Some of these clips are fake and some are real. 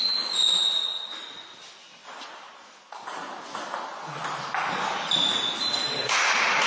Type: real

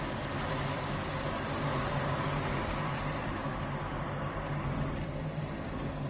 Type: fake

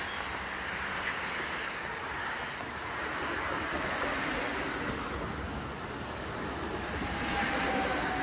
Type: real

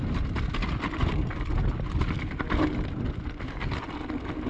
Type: real